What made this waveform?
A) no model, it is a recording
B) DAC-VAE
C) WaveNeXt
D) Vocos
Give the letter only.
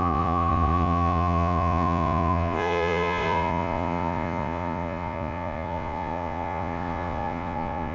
D